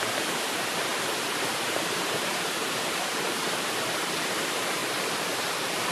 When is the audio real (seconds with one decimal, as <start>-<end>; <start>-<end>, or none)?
0.9-1.5; 4.8-5.9